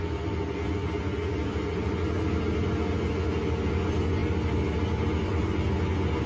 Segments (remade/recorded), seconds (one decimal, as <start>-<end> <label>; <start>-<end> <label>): 0.0-6.3 recorded